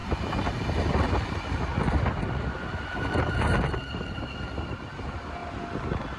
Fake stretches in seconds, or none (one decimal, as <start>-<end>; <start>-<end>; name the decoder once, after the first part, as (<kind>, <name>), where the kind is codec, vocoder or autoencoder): none